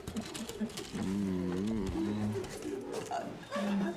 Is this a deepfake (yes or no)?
no